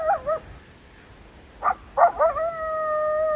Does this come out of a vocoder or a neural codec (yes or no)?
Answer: no